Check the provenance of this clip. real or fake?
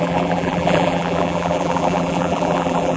fake